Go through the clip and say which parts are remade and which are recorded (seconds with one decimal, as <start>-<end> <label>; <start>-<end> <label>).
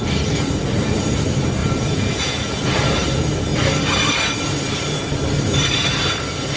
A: 0.0-1.6 recorded; 1.6-2.7 remade; 2.7-6.6 recorded